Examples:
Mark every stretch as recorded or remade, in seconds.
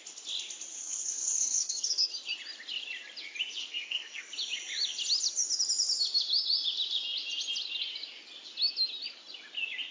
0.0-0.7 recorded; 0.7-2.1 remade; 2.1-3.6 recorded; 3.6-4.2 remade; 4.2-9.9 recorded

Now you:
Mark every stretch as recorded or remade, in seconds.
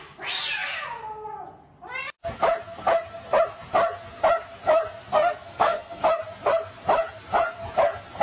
0.0-5.1 recorded; 5.1-6.0 remade; 6.0-8.2 recorded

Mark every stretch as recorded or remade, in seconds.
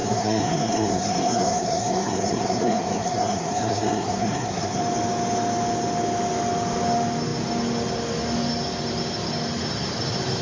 0.0-4.8 remade; 4.8-10.4 recorded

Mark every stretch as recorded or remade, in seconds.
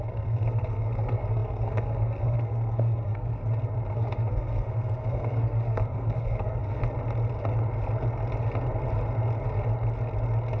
0.0-3.4 remade; 3.4-3.9 recorded; 3.9-6.8 remade; 6.8-10.6 recorded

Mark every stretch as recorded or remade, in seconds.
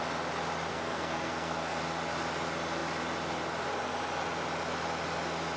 0.0-0.7 recorded; 0.7-1.8 remade; 1.8-5.6 recorded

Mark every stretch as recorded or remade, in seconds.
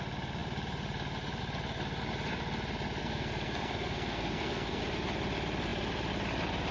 0.0-3.0 recorded; 3.0-4.8 remade; 4.8-6.7 recorded